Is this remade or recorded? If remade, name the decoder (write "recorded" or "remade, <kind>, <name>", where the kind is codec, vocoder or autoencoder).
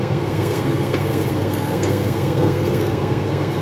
remade, codec, SNAC